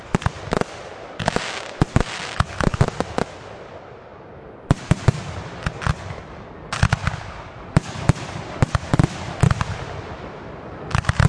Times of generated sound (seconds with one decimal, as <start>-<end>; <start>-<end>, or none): none